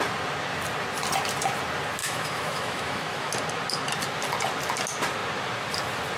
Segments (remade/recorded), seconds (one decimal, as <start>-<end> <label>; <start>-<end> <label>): 0.0-2.0 recorded; 2.0-3.3 remade; 3.3-6.2 recorded